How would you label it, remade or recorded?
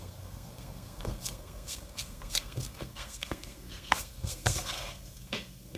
remade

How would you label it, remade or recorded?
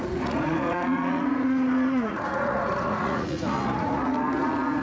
remade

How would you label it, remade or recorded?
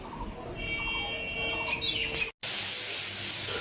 recorded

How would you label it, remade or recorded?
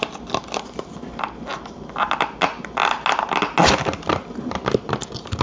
recorded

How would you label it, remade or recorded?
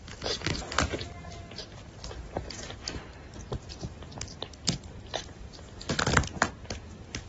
recorded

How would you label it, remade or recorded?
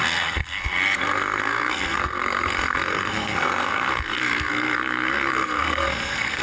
remade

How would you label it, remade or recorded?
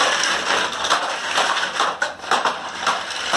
recorded